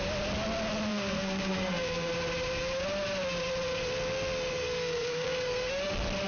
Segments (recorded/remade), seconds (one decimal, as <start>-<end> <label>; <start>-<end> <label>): 0.0-0.9 recorded; 0.9-2.1 remade; 2.1-4.5 recorded; 4.5-5.7 remade; 5.7-6.3 recorded